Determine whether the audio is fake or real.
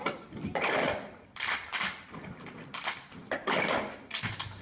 real